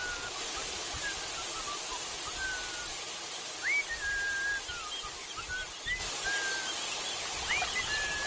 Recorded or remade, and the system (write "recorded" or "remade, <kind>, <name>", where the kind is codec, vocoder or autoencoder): recorded